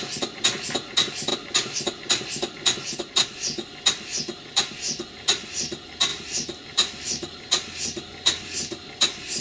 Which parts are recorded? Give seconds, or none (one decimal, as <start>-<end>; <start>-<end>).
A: 0.0-6.1